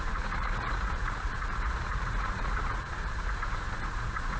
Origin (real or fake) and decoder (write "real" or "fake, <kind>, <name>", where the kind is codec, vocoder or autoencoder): fake, vocoder, Vocos